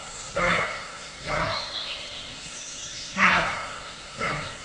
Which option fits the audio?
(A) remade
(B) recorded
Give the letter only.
A